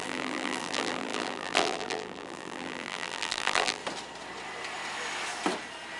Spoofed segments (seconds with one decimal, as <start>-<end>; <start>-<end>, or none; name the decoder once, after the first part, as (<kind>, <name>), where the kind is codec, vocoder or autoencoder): 0.0-3.8 (vocoder, BigVGAN v2)